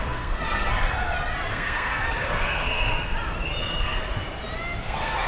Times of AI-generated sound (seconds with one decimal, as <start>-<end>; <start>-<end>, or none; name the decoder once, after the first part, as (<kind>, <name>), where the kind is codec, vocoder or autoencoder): 0.0-0.7 (codec, SNAC); 1.5-3.1; 3.6-4.0; 4.8-5.3